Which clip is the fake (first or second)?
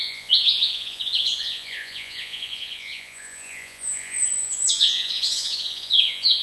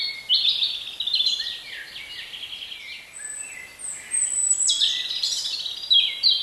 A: first